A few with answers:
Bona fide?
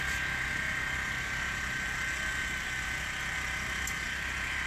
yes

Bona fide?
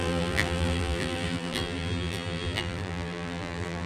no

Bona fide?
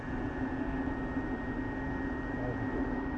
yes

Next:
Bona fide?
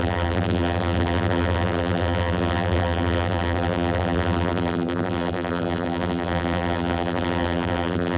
no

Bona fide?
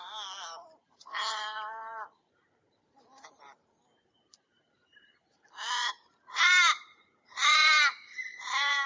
no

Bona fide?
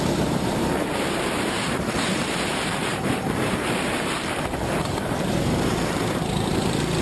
no